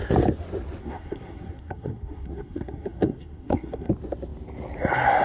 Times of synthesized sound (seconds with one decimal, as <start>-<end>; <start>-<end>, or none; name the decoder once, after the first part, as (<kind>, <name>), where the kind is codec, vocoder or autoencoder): 0.8-3.9 (codec, SNAC)

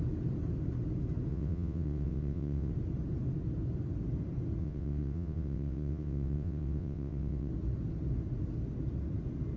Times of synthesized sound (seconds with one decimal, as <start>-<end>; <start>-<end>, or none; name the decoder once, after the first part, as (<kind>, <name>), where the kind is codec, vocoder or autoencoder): 1.3-2.7 (vocoder, WaveNeXt); 4.6-7.5